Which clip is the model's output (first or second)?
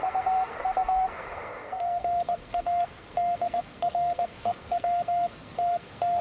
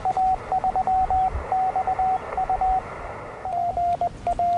first